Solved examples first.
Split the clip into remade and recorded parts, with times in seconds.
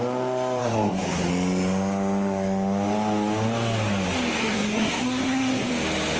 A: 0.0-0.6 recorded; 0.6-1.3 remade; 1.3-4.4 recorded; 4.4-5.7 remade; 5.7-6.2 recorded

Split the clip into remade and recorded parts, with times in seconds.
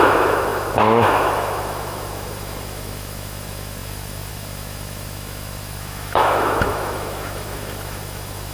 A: 0.0-8.5 remade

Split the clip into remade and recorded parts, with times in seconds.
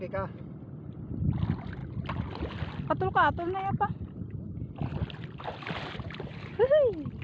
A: 0.0-7.2 recorded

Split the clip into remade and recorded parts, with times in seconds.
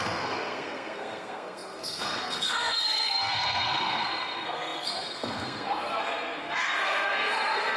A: 0.0-7.8 remade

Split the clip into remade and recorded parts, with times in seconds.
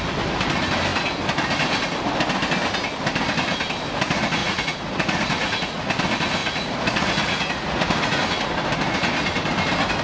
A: 0.0-4.4 recorded; 4.4-5.9 remade; 5.9-6.4 recorded; 6.4-8.2 remade; 8.2-10.0 recorded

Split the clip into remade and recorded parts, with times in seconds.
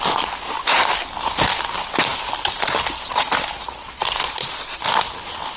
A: 0.0-5.6 recorded